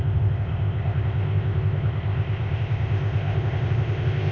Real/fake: fake